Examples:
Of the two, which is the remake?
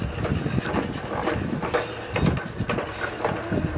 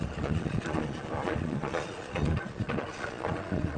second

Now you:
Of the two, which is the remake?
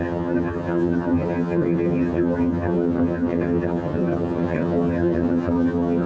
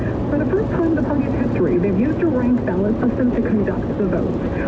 first